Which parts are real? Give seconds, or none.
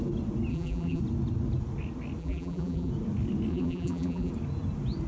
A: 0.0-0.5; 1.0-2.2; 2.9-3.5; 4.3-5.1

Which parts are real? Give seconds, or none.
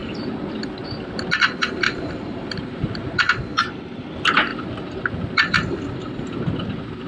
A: 3.8-4.5; 5.1-7.1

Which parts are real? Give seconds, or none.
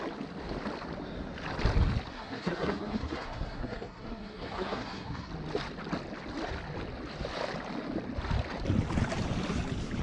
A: 0.0-2.1; 5.3-10.0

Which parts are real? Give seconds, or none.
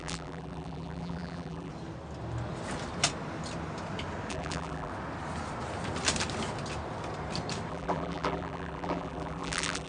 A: 1.7-4.3; 4.9-7.7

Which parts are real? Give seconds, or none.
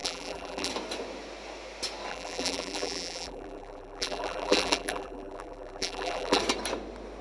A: 0.7-2.1; 6.4-7.2